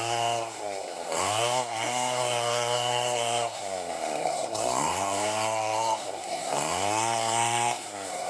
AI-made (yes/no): yes